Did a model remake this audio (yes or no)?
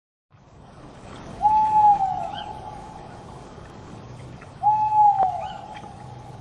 yes